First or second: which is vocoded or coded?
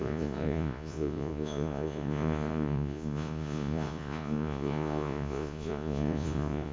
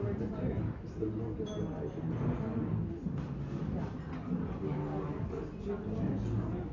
first